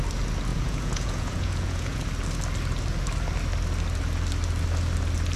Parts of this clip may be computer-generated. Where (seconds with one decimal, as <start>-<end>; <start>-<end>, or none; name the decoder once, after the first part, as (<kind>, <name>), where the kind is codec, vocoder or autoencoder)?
0.5-2.0 (vocoder, Vocos)